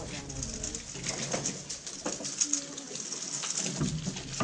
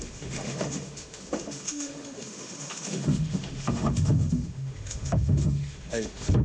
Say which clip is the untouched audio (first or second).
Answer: first